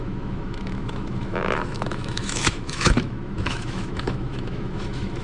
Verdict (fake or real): fake